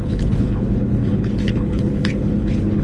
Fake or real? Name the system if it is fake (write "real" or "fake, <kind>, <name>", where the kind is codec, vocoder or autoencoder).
fake, codec, HILCodec